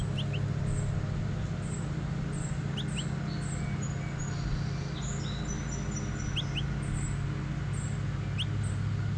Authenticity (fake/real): real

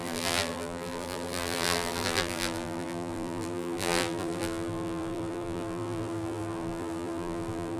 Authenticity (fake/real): fake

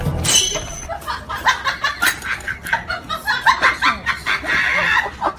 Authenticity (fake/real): real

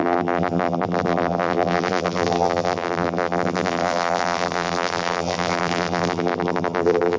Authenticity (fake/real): fake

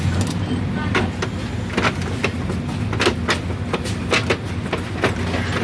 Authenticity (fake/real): real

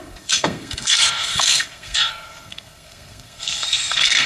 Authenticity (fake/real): fake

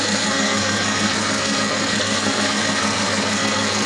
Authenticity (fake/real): fake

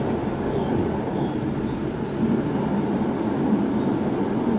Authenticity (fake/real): real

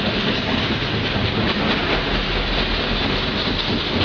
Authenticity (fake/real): real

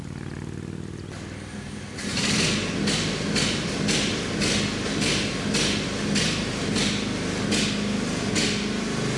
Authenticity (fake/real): real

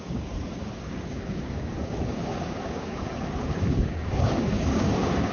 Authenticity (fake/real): fake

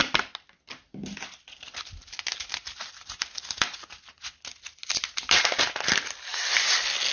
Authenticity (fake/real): real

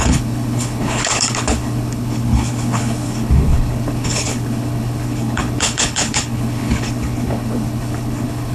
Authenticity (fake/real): fake